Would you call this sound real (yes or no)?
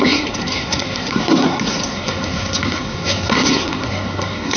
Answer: no